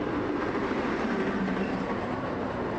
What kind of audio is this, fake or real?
fake